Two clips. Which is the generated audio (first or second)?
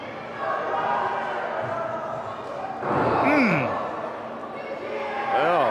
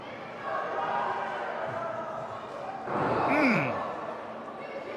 second